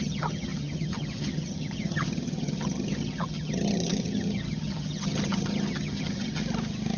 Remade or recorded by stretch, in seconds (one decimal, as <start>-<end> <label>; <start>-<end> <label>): 0.0-6.4 remade; 6.4-7.0 recorded